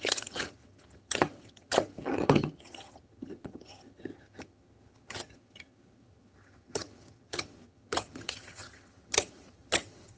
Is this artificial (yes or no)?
yes